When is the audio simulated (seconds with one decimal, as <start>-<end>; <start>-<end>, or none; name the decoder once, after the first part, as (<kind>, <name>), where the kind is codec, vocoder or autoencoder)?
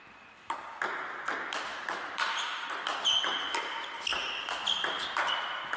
1.7-2.8 (vocoder, BigVGAN v2)